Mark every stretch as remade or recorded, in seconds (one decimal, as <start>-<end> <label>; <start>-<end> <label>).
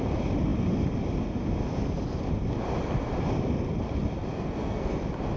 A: 0.0-4.3 recorded; 4.3-5.0 remade; 5.0-5.4 recorded